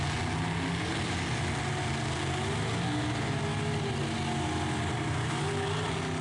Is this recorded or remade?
recorded